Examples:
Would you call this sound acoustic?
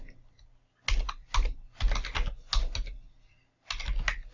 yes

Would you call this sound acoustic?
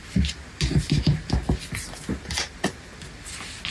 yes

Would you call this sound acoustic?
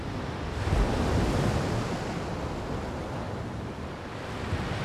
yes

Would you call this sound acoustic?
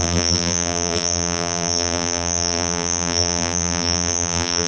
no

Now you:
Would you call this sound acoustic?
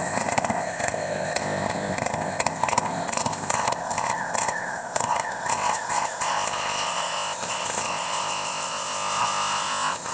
no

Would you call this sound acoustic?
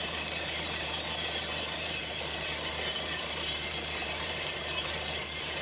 no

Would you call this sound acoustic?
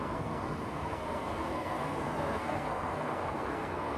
no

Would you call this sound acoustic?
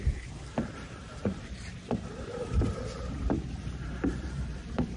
no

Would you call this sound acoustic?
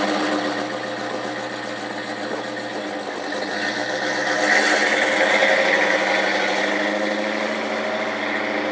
yes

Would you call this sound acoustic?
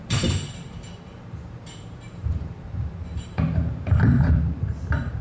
no